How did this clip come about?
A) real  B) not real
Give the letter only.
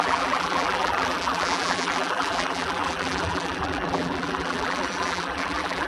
B